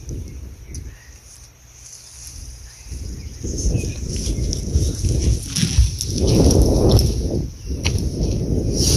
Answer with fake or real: real